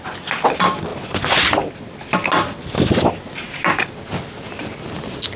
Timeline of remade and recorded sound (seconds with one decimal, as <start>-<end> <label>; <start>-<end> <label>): 0.0-5.4 recorded